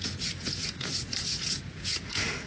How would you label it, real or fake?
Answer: fake